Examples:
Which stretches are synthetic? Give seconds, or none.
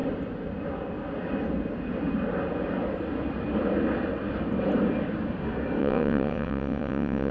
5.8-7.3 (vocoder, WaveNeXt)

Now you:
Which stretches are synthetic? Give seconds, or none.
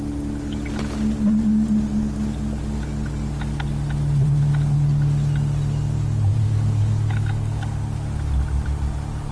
6.4-7.8 (codec, DAC)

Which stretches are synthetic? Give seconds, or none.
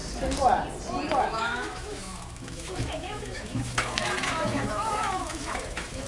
1.2-6.1 (autoencoder, DAC-VAE)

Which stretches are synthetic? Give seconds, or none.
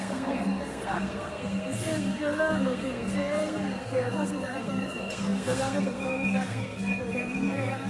0.0-7.9 (codec, SNAC)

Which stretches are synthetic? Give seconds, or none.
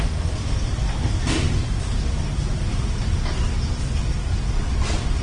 none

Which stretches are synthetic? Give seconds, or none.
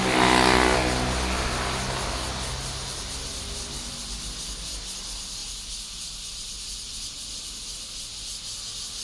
none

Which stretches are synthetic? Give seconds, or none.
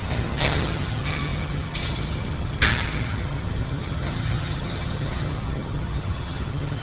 0.0-6.8 (vocoder, HiFi-GAN)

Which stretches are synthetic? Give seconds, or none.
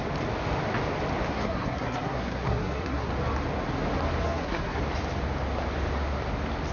1.3-3.1 (codec, SNAC); 4.2-4.8